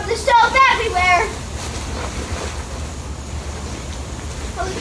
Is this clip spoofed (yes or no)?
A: no